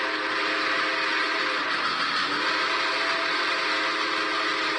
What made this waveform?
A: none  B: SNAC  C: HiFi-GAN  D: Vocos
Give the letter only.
A